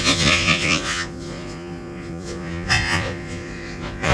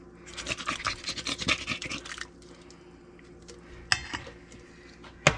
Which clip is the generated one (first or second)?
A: first